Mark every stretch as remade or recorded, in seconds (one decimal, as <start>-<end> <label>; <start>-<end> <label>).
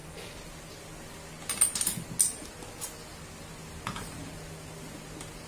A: 0.0-5.5 recorded